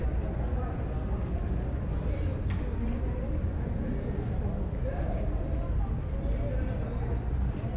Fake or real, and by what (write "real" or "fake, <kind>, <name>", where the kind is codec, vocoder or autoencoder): real